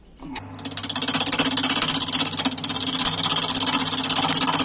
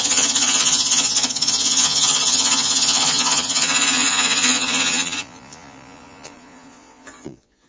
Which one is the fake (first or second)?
second